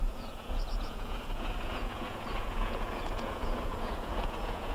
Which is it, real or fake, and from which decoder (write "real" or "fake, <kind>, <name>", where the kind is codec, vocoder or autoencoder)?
fake, vocoder, Vocos